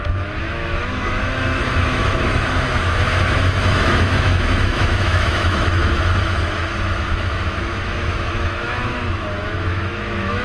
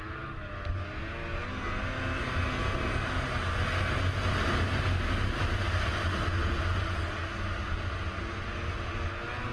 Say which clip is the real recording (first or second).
second